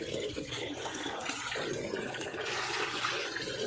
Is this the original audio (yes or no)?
no